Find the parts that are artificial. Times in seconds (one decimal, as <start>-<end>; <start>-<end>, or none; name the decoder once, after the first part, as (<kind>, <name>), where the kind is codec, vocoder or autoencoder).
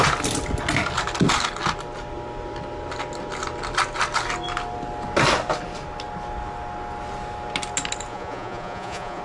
8.1-9.2 (vocoder, Vocos)